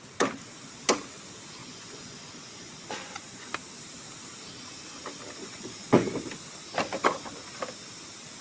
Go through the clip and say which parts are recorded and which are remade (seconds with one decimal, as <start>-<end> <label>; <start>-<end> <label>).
0.0-1.6 recorded; 1.6-3.5 remade; 3.5-5.4 recorded; 5.4-6.1 remade; 6.1-8.4 recorded